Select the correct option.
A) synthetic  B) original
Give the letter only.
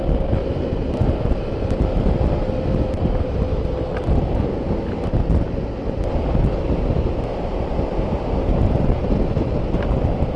B